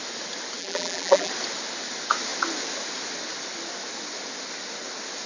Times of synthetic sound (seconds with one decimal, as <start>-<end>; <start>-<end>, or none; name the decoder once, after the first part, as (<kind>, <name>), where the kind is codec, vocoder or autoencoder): 0.6-1.3 (vocoder, BigVGAN v2)